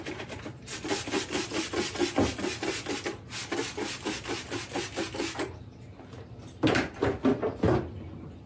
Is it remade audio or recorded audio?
recorded